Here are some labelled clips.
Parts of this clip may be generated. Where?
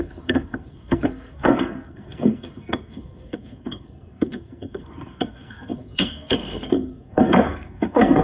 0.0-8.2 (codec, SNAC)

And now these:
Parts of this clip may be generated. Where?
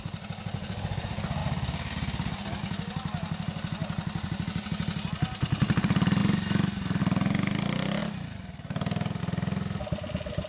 none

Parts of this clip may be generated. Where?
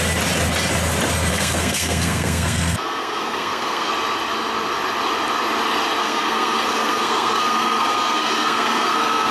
1.3-3.9 (codec, SNAC); 6.0-9.3